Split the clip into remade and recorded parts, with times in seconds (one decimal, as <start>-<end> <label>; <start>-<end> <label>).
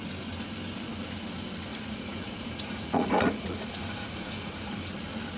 0.0-1.7 recorded; 1.7-4.9 remade; 4.9-5.4 recorded